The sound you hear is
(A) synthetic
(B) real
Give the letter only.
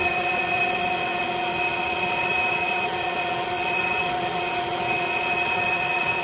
A